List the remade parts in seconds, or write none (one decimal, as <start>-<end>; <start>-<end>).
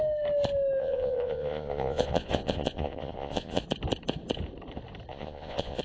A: 0.8-3.6; 5.1-5.8